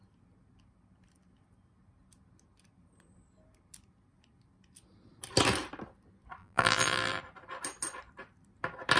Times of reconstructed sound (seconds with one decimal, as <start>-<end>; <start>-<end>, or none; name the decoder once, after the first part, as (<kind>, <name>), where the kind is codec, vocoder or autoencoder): 6.4-7.2 (vocoder, BigVGAN v2)